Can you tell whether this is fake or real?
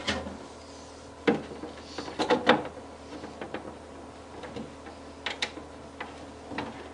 real